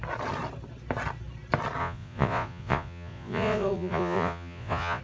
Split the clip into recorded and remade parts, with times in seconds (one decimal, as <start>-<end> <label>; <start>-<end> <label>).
0.0-1.8 recorded; 1.8-5.0 remade